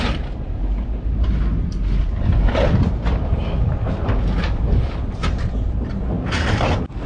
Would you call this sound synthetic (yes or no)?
no